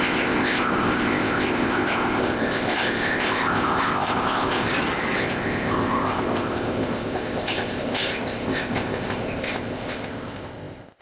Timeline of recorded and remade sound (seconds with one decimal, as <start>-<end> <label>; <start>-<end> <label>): 0.0-4.7 remade; 4.7-5.2 recorded; 5.2-11.0 remade